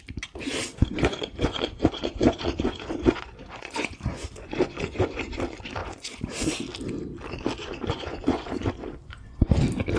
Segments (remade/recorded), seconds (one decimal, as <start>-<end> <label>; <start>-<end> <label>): 0.0-0.7 recorded; 0.7-5.2 remade; 5.2-5.8 recorded; 5.8-6.3 remade; 6.3-7.6 recorded; 7.6-9.5 remade; 9.5-10.0 recorded